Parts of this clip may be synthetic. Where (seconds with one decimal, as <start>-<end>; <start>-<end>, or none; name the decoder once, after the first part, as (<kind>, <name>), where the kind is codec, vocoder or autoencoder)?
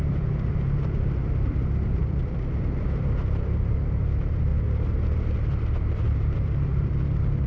0.0-4.5 (vocoder, BigVGAN v2); 5.9-7.5